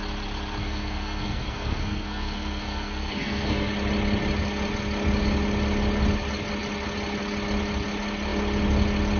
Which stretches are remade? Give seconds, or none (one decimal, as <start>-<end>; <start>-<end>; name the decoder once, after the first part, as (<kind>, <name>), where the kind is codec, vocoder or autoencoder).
0.6-3.7 (codec, SNAC)